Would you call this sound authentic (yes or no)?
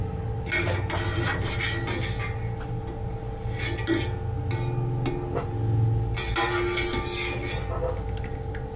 yes